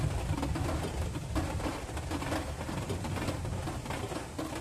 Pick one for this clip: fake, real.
real